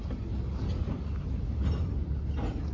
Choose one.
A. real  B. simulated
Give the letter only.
A